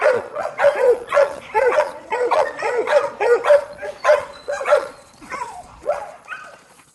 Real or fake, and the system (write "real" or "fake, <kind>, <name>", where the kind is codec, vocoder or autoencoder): fake, vocoder, Vocos